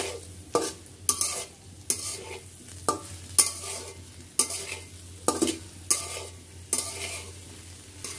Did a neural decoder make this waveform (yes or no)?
no